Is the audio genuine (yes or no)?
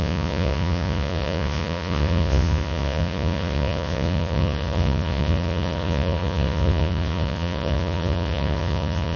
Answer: no